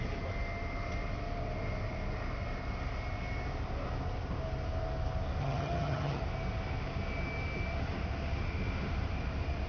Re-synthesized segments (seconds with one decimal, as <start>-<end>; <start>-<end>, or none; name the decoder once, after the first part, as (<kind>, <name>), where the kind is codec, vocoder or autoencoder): 5.4-6.2 (vocoder, HiFi-GAN)